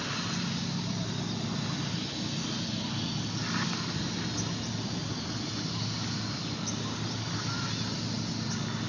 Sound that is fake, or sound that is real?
real